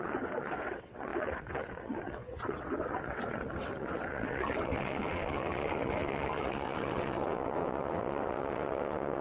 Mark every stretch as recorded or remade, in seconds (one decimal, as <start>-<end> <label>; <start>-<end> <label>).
0.0-9.2 remade